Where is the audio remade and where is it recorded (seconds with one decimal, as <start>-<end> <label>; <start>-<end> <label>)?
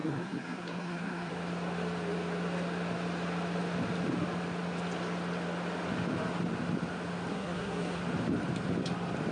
0.0-1.3 remade; 1.3-7.3 recorded; 7.3-8.0 remade; 8.0-9.3 recorded